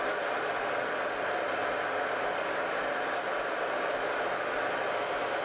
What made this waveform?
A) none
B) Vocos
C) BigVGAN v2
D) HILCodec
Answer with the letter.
A